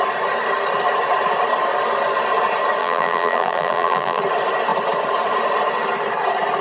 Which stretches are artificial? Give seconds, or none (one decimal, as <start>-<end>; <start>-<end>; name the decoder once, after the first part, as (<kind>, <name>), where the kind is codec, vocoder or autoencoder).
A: 2.8-4.2 (vocoder, BigVGAN v2)